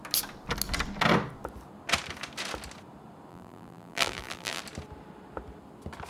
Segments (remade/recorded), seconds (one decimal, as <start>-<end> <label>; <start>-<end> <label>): 0.0-3.3 recorded; 3.3-4.6 remade; 4.6-6.1 recorded